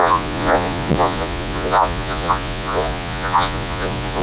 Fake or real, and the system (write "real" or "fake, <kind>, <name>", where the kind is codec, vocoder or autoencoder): fake, vocoder, Vocos